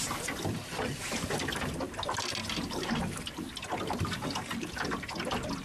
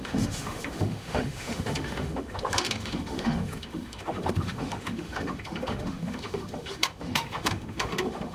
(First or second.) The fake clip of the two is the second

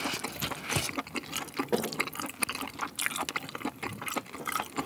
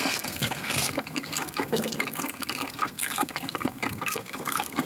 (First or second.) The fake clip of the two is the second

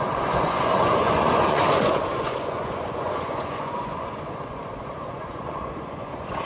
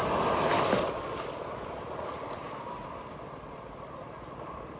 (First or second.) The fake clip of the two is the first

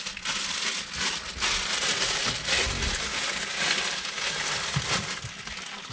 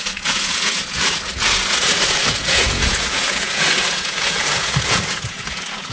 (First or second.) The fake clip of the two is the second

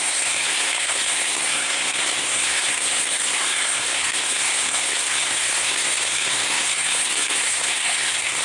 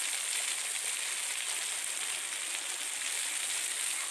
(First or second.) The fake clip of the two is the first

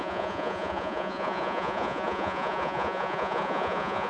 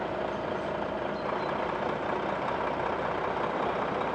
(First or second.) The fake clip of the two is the first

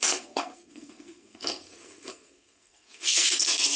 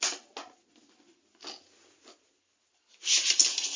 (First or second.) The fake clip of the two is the first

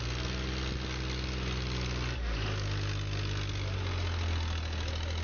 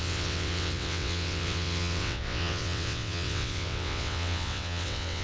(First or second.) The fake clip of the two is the second